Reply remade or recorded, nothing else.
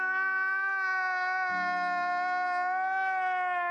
recorded